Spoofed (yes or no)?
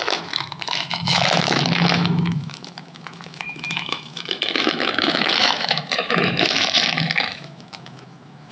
yes